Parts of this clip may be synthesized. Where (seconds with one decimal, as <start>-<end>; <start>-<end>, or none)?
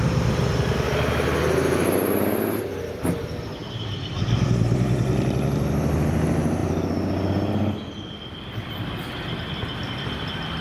none